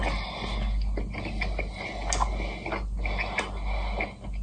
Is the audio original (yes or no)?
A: yes